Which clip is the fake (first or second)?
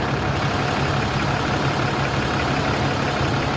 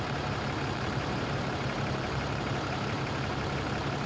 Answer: second